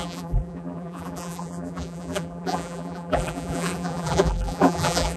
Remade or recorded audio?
remade